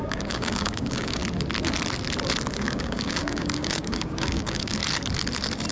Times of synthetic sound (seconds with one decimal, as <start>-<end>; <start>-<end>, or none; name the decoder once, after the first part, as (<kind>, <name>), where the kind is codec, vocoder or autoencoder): 0.0-1.2 (codec, DAC); 2.5-4.8